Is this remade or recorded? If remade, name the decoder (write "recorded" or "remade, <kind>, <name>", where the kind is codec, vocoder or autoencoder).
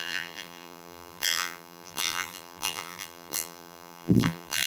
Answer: remade, vocoder, BigVGAN v2